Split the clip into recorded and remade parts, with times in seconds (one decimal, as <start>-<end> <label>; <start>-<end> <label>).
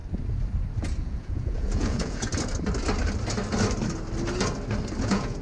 0.0-1.0 recorded; 1.0-2.3 remade; 2.3-5.0 recorded; 5.0-5.4 remade